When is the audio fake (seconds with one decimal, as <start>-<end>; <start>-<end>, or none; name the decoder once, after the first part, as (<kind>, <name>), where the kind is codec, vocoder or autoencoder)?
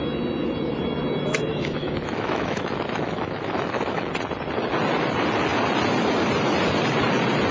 1.5-4.1 (autoencoder, DAC-VAE)